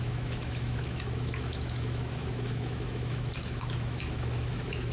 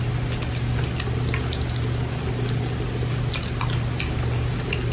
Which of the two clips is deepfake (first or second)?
first